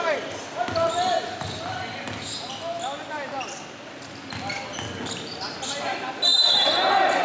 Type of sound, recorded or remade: recorded